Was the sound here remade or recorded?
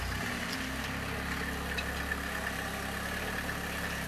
recorded